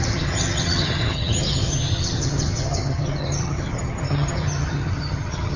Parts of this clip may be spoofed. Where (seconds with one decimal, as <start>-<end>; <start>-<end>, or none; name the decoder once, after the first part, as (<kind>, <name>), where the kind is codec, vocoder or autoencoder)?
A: 0.0-5.6 (vocoder, HiFi-GAN)